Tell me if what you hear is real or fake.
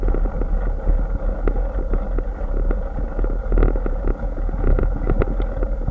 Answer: real